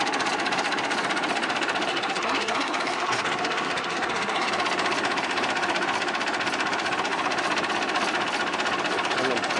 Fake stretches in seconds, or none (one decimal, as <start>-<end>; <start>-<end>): 1.9-4.5